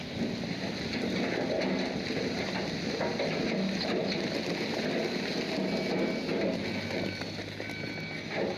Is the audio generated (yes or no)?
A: no